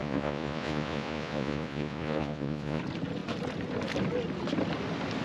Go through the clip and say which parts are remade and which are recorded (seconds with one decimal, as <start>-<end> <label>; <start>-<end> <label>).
0.0-2.8 remade; 2.8-5.2 recorded